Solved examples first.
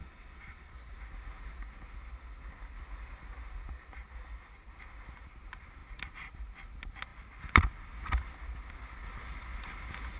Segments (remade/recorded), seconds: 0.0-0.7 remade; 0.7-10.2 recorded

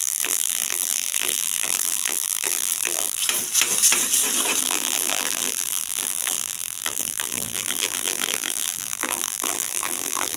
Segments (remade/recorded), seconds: 0.0-3.2 remade; 3.2-4.6 recorded; 4.6-10.4 remade